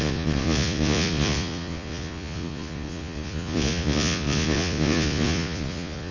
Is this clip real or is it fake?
fake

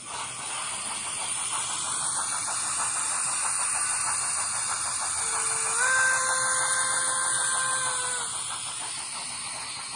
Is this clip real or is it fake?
real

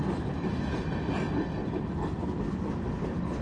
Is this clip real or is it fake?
real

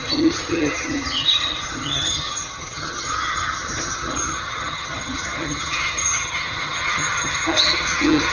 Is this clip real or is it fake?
fake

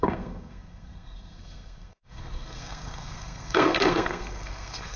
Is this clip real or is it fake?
fake